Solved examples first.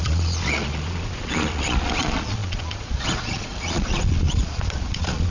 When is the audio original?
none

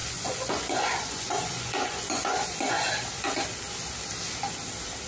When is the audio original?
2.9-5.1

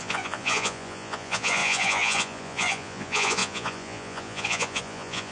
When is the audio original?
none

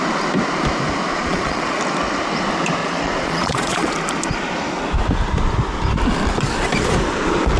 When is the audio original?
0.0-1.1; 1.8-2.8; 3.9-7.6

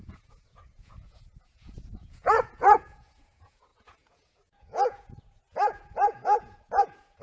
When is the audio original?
none